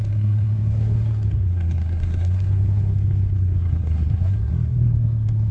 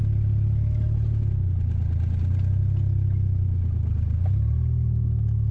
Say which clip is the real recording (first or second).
second